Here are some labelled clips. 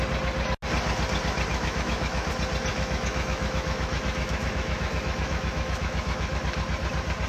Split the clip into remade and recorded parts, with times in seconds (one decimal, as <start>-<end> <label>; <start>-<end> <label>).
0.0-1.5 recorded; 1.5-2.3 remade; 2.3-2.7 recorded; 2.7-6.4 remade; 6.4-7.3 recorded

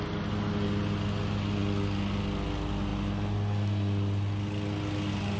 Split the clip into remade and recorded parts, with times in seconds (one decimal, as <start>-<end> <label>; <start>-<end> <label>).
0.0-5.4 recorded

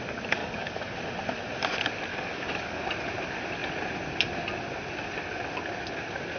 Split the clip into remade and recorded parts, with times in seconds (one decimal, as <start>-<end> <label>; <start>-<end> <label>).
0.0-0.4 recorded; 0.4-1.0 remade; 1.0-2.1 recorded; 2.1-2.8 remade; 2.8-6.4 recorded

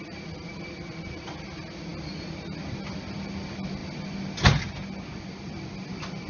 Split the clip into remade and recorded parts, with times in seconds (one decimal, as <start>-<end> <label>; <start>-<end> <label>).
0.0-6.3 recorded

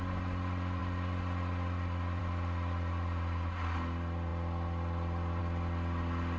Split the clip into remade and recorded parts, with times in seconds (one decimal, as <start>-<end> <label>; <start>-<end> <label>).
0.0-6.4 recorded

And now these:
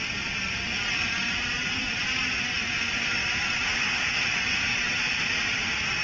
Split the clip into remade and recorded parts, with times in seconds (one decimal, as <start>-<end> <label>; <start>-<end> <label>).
0.0-1.4 recorded; 1.4-2.4 remade; 2.4-3.2 recorded; 3.2-3.8 remade; 3.8-4.7 recorded; 4.7-5.6 remade; 5.6-6.0 recorded

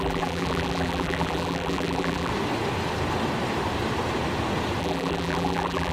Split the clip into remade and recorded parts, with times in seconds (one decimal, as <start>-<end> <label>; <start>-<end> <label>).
0.0-2.3 remade; 2.3-4.8 recorded; 4.8-5.9 remade

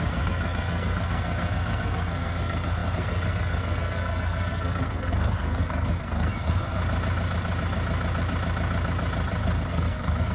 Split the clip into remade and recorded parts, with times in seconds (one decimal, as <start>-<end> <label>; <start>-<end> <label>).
0.0-6.8 remade; 6.8-9.7 recorded; 9.7-10.3 remade